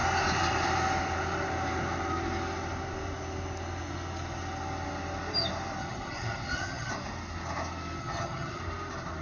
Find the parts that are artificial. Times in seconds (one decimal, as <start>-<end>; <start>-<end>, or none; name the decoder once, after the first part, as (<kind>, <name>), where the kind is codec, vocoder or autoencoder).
5.8-6.9 (vocoder, HiFi-GAN); 8.0-8.6